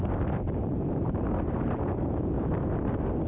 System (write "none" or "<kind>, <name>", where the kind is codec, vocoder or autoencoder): none